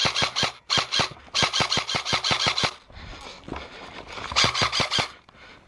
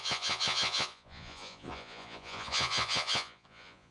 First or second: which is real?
first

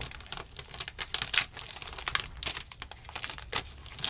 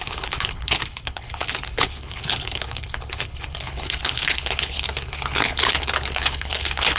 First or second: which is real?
first